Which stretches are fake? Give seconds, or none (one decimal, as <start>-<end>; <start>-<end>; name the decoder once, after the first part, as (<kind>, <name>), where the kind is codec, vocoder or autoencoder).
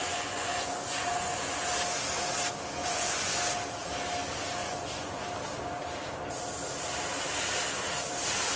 0.0-1.7 (vocoder, Vocos); 2.8-3.4; 4.6-5.2